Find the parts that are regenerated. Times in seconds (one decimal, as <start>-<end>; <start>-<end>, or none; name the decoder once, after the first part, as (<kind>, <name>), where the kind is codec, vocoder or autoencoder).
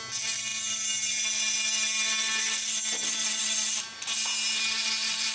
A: none